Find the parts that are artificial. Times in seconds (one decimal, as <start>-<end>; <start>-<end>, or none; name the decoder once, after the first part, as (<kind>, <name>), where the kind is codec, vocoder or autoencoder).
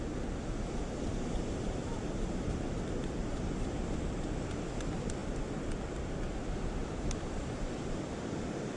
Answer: 1.1-4.0 (vocoder, BigVGAN v2); 6.8-7.4